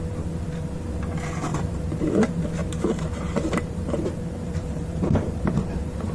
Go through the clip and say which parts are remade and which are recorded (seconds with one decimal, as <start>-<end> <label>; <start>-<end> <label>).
0.0-1.5 recorded; 1.5-2.2 remade; 2.2-2.6 recorded; 2.6-6.1 remade